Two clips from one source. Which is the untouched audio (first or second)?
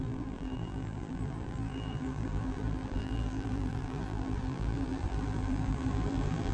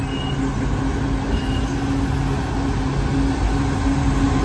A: second